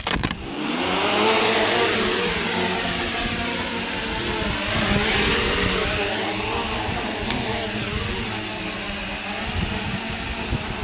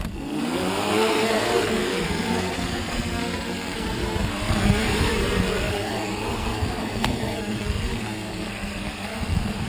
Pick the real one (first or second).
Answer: first